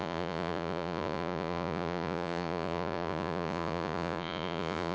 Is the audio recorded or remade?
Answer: remade